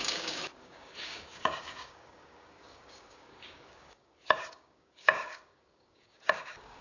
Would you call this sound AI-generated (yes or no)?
yes